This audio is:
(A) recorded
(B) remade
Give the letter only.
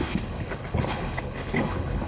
B